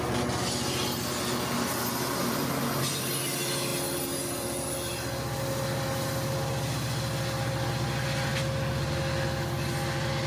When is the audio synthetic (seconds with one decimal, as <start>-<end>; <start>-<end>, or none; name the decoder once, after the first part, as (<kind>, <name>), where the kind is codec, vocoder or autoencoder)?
2.2-3.1 (vocoder, BigVGAN v2)